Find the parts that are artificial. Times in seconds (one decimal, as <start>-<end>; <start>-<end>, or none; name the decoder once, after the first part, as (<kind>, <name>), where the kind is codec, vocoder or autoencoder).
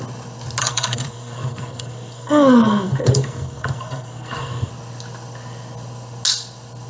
0.6-4.7 (codec, SNAC)